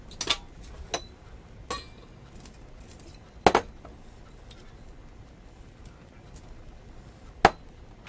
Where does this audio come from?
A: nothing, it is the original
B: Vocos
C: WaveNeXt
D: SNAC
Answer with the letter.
A